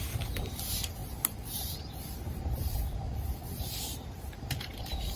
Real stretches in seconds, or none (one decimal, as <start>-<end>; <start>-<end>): none